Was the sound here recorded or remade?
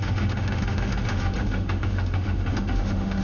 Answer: remade